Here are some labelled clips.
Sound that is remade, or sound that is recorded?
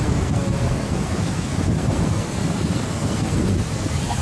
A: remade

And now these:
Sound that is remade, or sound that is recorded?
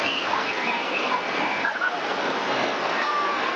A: remade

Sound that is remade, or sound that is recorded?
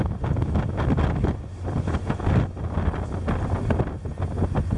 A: recorded